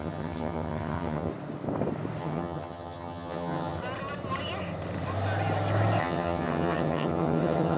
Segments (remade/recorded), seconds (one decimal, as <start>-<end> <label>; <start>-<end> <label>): 0.0-1.3 remade; 1.3-2.2 recorded; 2.2-3.8 remade; 3.8-6.0 recorded; 6.0-7.8 remade